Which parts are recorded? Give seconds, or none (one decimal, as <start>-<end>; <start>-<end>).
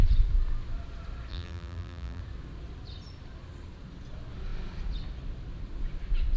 0.0-1.3; 2.2-6.4